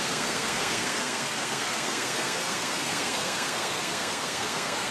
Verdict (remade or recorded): remade